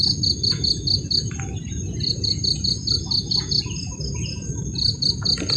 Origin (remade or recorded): recorded